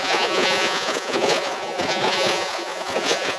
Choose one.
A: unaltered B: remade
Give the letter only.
B